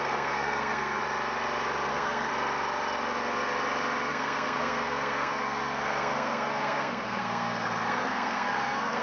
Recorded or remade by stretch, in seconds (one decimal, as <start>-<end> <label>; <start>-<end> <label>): 0.0-1.0 remade; 1.0-1.9 recorded; 1.9-2.3 remade; 2.3-4.1 recorded; 4.1-9.0 remade